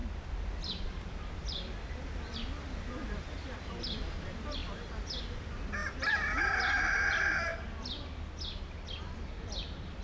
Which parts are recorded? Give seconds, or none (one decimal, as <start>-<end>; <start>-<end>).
0.0-1.1; 4.6-5.2; 7.5-8.6